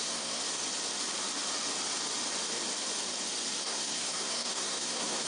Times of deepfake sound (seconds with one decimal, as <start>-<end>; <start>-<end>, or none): 0.0-0.4; 3.6-5.3